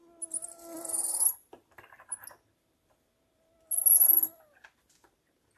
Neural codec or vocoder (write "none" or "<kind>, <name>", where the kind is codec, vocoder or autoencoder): none